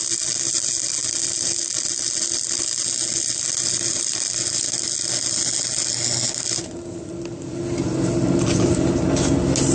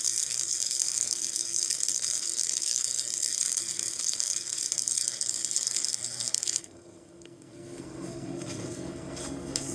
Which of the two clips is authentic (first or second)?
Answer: first